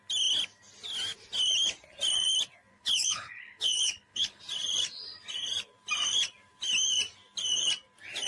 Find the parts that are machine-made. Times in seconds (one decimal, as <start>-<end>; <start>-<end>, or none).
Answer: 2.7-4.4